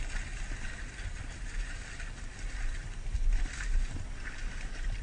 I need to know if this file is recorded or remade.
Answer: recorded